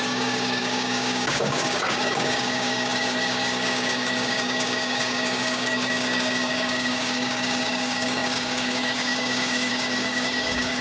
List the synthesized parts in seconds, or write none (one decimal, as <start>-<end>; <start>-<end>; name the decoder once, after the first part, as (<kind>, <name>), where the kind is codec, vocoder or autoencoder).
0.0-10.8 (codec, DAC)